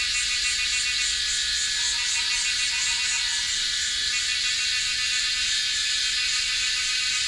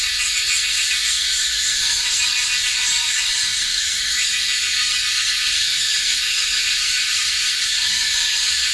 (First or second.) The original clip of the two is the first